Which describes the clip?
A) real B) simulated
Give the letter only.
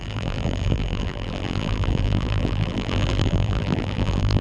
B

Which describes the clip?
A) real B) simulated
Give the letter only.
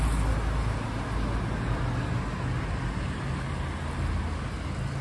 A